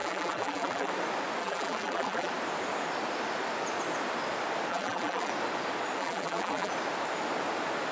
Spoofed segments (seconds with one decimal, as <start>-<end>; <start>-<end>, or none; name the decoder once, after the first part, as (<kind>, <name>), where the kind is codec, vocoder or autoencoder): 0.0-0.9 (vocoder, BigVGAN v2); 1.4-2.3; 4.7-5.3; 6.0-6.7